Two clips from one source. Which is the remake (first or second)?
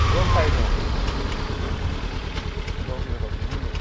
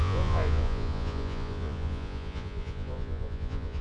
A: second